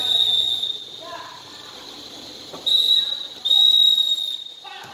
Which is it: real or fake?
real